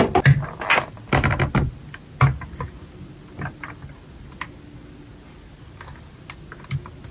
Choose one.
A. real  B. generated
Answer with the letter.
A